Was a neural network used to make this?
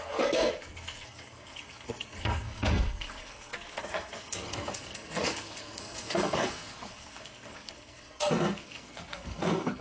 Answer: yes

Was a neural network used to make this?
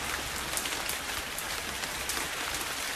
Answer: no